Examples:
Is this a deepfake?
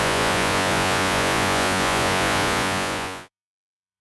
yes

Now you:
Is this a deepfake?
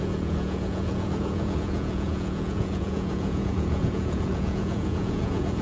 yes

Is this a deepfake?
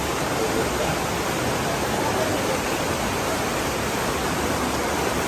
no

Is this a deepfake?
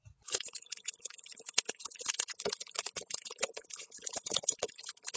yes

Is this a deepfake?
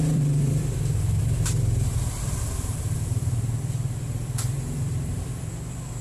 yes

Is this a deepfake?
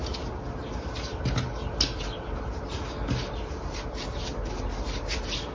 no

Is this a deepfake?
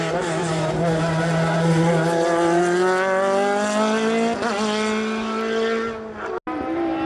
no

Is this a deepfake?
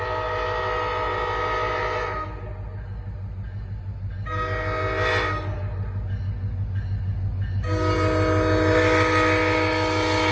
no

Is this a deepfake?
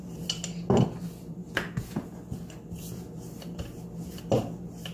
no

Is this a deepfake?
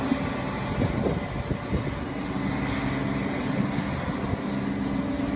no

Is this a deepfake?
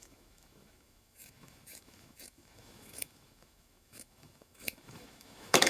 yes